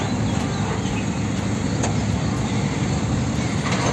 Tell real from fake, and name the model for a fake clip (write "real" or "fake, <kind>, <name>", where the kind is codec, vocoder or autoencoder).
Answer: real